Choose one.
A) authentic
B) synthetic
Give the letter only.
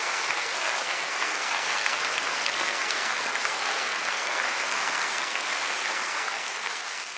B